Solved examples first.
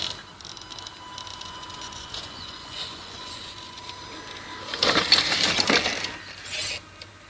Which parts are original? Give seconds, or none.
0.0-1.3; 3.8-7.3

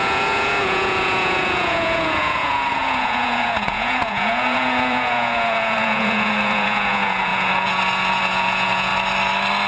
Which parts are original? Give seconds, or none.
8.9-9.7

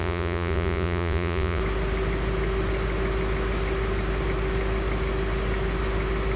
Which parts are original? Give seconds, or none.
1.6-6.4

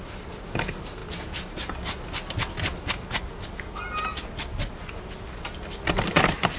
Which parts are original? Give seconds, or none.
0.0-6.6

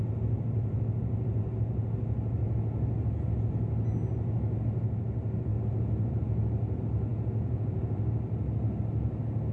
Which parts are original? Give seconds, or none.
0.0-7.1; 7.8-9.5